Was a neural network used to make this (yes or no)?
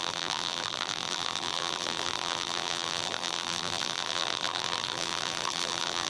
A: yes